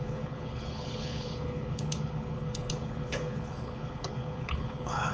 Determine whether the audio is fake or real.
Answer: fake